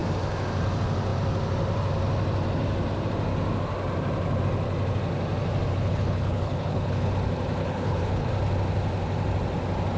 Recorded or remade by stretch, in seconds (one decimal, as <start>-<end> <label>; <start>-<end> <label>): 0.0-5.7 recorded; 5.7-7.1 remade; 7.1-7.6 recorded; 7.6-8.3 remade; 8.3-10.0 recorded